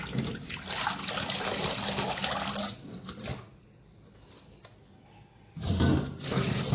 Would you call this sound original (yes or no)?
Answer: yes